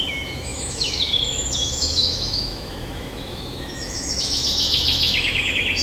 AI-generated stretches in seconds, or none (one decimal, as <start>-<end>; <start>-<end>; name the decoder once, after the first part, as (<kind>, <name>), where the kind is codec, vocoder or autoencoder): 0.0-5.8 (autoencoder, DAC-VAE)